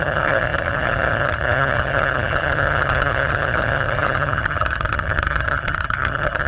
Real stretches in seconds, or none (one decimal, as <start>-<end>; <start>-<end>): none